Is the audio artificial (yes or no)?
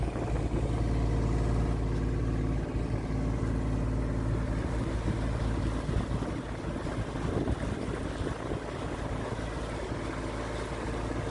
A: no